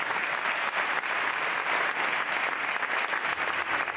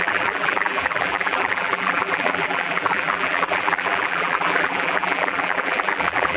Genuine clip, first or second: first